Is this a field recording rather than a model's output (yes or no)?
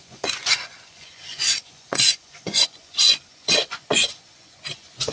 no